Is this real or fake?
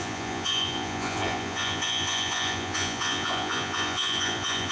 fake